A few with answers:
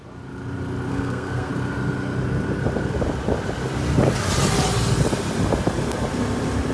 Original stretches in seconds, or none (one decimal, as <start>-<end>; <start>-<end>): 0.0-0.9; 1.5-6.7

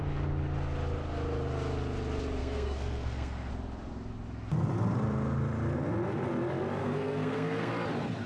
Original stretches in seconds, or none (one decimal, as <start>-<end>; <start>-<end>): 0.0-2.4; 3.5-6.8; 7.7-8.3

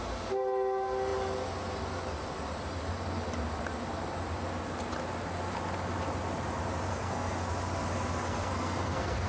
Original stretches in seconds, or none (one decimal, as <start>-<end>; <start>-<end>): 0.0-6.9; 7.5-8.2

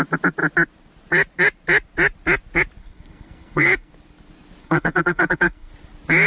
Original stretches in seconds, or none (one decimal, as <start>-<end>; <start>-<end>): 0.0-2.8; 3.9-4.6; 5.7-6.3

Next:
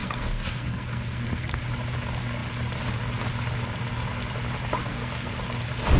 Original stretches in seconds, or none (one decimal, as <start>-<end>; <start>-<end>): 1.6-4.8; 5.3-6.0

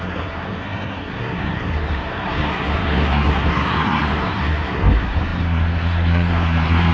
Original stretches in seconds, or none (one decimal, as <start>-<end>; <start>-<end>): none

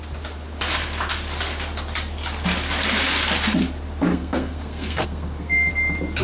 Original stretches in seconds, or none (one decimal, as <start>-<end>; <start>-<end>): 0.0-4.1; 5.7-6.2